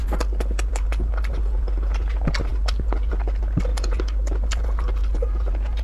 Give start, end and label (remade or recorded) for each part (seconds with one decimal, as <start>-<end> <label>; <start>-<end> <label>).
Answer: 0.0-5.8 recorded